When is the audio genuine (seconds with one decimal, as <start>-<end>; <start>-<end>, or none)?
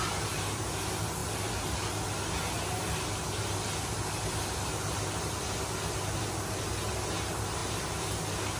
0.0-8.6